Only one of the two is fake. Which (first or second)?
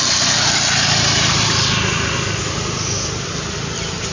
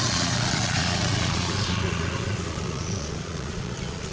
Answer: second